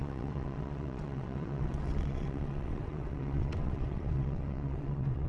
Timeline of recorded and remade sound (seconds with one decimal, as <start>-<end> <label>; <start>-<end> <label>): 0.0-5.3 remade